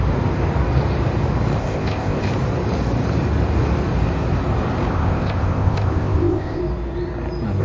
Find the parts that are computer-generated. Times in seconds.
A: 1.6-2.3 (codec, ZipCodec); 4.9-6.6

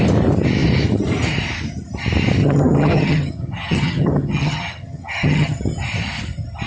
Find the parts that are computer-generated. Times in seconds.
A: 2.4-5.6 (vocoder, HiFi-GAN)

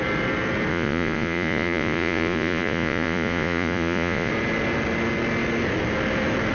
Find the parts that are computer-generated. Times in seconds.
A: 0.7-4.3 (vocoder, Vocos)